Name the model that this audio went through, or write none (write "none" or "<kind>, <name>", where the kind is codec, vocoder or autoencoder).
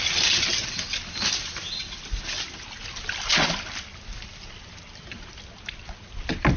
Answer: none